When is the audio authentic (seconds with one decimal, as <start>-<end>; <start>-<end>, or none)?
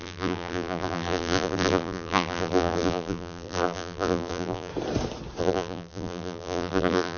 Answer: 4.7-5.4